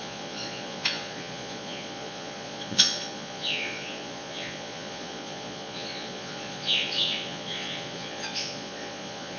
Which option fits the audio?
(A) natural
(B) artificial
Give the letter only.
B